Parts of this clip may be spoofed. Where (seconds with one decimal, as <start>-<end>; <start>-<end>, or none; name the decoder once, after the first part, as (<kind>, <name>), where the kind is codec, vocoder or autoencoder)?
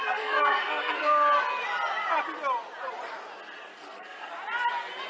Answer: 0.0-1.3 (codec, SNAC); 3.7-4.3